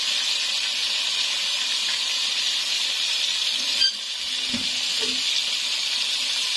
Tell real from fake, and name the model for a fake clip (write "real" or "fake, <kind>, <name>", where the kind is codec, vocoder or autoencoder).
real